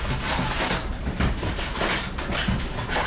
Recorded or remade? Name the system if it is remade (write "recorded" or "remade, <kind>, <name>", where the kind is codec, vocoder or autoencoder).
recorded